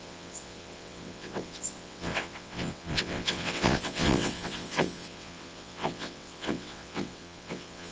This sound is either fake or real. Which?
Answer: fake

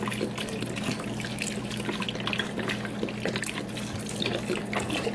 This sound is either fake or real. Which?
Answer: real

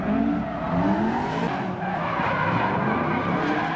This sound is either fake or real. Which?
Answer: real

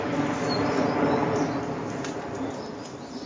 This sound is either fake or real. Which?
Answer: real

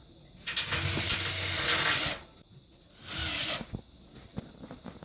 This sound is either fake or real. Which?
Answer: real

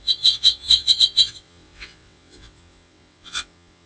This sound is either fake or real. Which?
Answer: fake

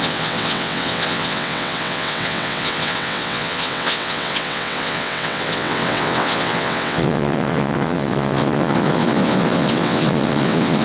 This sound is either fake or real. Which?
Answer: fake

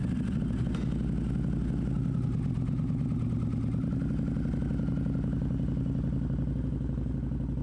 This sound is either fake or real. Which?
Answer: real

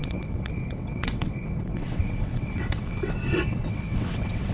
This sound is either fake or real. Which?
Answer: fake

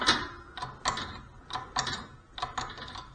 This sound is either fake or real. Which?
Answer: real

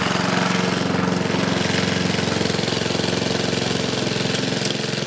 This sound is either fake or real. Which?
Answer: real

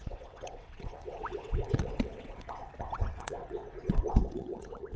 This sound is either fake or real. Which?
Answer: fake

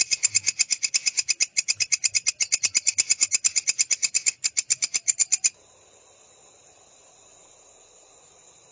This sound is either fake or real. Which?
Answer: real